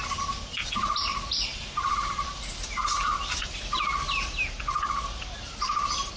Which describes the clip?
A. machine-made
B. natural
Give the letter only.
B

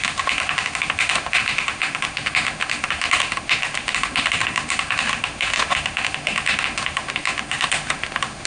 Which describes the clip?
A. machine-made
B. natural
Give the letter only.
A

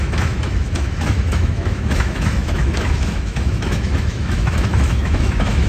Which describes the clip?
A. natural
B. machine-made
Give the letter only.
B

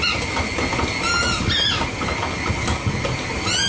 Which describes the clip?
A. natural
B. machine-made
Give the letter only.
A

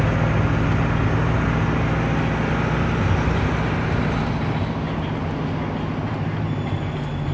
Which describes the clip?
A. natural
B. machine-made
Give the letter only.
A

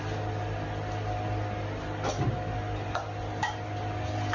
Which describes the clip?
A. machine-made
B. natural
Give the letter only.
B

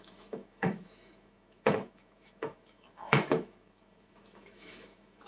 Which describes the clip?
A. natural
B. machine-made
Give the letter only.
B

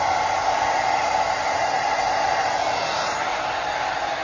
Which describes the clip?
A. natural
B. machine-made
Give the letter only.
A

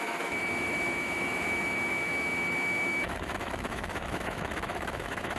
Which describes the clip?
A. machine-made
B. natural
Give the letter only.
A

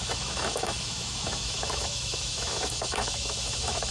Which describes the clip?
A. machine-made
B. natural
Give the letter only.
A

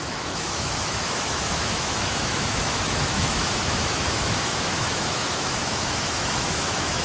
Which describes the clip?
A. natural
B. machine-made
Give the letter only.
B